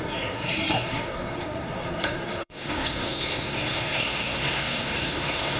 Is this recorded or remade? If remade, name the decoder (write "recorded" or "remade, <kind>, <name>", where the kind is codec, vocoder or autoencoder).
remade, codec, SNAC